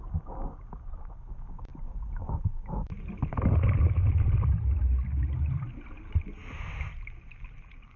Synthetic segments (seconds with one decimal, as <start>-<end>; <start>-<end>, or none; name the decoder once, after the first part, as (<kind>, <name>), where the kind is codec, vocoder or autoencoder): none